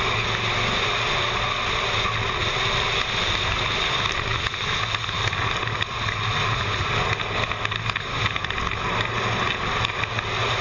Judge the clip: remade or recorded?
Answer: recorded